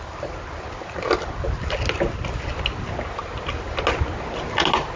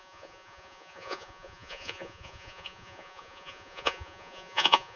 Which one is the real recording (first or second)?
first